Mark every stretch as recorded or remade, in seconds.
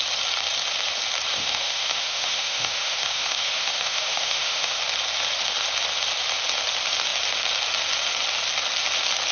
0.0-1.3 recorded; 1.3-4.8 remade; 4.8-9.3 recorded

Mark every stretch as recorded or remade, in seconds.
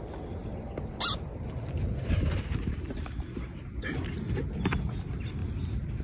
0.0-6.0 recorded